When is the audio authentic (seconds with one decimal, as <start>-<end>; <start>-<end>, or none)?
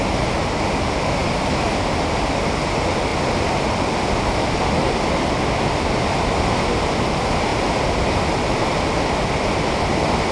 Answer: 0.0-10.3